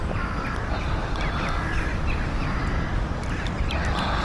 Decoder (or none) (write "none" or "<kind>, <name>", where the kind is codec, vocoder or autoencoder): none